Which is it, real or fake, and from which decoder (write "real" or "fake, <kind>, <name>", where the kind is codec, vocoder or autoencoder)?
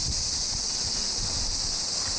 real